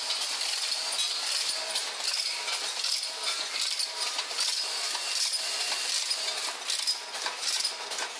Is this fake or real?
fake